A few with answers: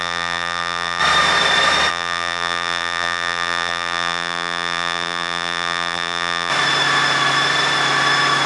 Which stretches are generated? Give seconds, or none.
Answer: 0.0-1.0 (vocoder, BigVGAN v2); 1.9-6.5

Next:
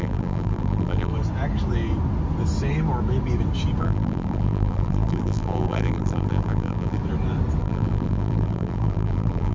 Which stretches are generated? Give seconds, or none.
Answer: 0.0-1.1 (vocoder, BigVGAN v2); 3.8-7.0; 7.6-9.5

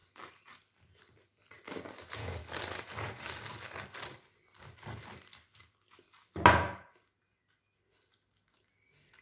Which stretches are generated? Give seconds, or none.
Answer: 0.0-1.8 (vocoder, BigVGAN v2); 2.4-6.4

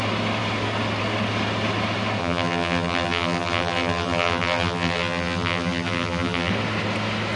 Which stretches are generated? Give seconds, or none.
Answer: 2.2-6.5 (vocoder, BigVGAN v2)

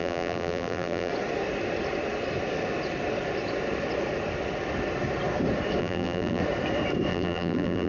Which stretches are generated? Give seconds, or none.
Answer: 0.0-1.1 (vocoder, BigVGAN v2); 5.8-6.4; 7.1-7.9

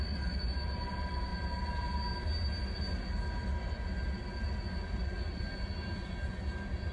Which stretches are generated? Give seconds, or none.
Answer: none